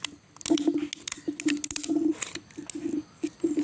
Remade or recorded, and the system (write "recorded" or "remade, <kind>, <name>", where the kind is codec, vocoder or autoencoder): recorded